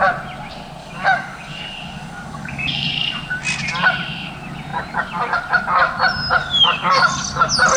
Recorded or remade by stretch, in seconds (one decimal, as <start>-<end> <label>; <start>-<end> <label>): 0.0-0.8 recorded; 0.8-2.9 remade; 2.9-6.4 recorded; 6.4-7.1 remade; 7.1-7.8 recorded